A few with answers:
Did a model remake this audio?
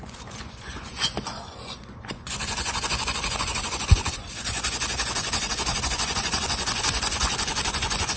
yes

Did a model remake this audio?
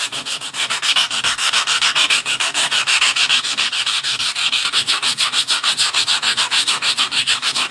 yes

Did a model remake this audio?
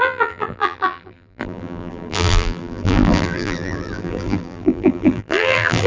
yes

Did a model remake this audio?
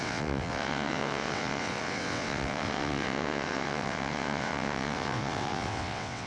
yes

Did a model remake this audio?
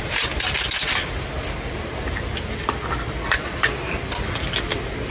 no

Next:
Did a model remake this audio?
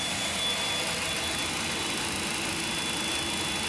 no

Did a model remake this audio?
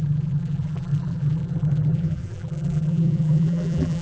yes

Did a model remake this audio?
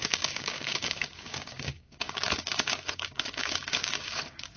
yes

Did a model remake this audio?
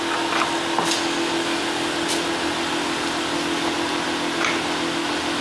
no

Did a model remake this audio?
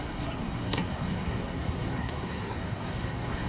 yes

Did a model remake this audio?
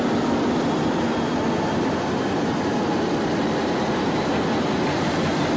no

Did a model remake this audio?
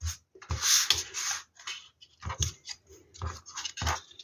no